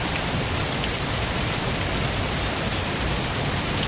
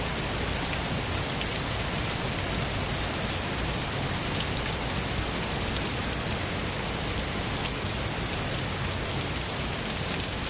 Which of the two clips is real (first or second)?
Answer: second